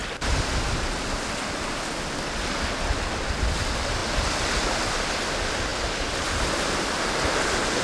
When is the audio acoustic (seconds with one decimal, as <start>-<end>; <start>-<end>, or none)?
0.0-7.8